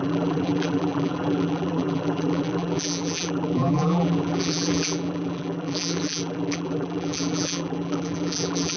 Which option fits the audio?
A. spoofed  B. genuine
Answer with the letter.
A